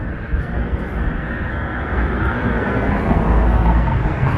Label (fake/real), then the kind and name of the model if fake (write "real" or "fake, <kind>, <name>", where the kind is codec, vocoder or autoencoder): fake, codec, SNAC